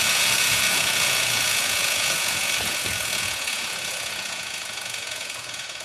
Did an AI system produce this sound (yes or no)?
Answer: yes